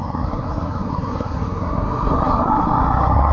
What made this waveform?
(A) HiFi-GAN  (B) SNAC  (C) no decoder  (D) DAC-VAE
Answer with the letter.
B